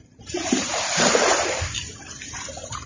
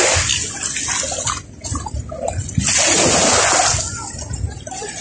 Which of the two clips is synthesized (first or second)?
first